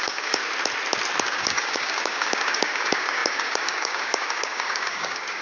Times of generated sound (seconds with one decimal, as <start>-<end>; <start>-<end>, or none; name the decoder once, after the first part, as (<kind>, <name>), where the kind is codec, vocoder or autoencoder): 0.0-0.4 (codec, DAC); 1.2-5.4